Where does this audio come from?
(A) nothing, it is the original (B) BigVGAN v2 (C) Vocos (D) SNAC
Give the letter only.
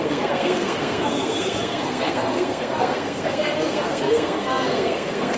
D